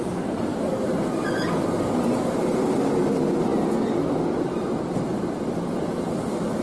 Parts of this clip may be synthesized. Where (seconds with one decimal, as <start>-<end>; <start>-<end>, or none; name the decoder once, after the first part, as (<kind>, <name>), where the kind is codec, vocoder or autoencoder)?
0.5-1.0 (vocoder, BigVGAN v2)